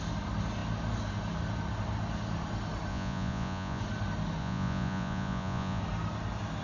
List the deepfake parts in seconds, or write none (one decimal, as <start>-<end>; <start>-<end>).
2.9-3.8; 4.4-5.8